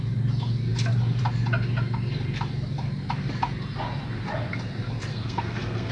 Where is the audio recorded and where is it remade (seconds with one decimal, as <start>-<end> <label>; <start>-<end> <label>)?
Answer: 0.0-5.1 recorded; 5.1-5.9 remade